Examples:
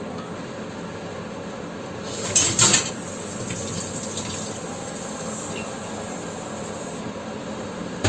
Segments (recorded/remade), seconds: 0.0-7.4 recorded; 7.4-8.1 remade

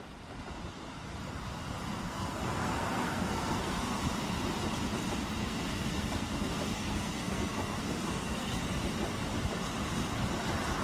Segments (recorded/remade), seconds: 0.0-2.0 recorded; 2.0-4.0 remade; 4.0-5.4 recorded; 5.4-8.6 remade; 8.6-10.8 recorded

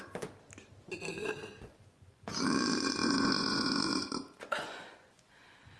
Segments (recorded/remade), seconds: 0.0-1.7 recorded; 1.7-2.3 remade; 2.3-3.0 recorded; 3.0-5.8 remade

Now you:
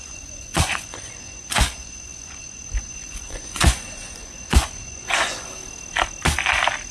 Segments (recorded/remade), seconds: 0.0-5.6 remade; 5.6-6.9 recorded

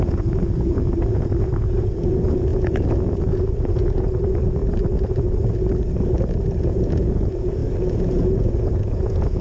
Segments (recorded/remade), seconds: 0.0-4.6 remade; 4.6-6.6 recorded; 6.6-7.6 remade; 7.6-8.1 recorded; 8.1-9.4 remade

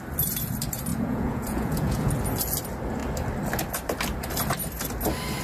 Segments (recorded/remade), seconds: 0.0-0.9 recorded; 0.9-2.1 remade; 2.1-5.4 recorded

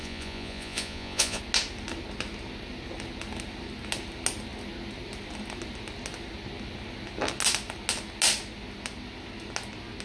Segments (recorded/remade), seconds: 0.0-1.4 remade; 1.4-10.0 recorded

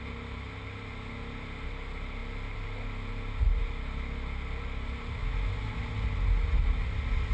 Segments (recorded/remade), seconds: 0.0-5.2 recorded; 5.2-5.8 remade; 5.8-7.3 recorded